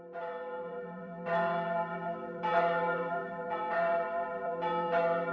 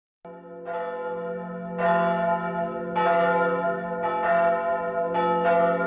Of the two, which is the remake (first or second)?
first